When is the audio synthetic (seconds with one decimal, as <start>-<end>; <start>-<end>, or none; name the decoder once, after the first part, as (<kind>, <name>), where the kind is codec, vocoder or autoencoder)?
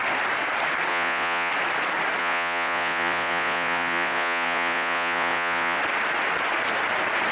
0.9-1.5 (vocoder, Vocos); 2.2-5.8